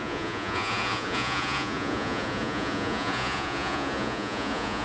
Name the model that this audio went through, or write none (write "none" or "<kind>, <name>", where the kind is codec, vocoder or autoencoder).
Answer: vocoder, Vocos